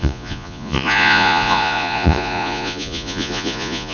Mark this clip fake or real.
fake